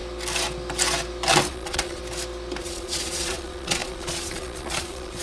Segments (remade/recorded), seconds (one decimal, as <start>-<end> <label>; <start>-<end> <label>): 0.0-1.5 recorded; 1.5-2.0 remade; 2.0-2.6 recorded; 2.6-5.2 remade